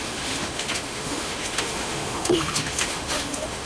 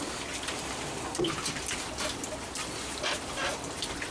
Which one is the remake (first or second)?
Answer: first